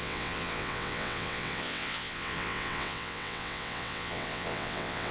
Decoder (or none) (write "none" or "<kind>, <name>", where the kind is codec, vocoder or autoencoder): vocoder, WaveNeXt